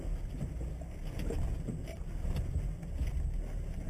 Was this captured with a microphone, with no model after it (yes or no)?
yes